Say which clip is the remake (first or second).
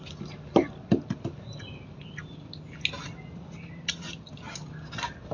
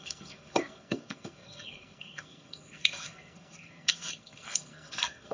second